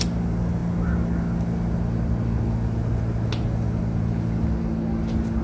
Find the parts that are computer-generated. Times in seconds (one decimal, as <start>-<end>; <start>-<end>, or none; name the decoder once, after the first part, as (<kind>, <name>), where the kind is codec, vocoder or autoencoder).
none